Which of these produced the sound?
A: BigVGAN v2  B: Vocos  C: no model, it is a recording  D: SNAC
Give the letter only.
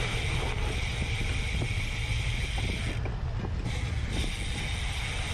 C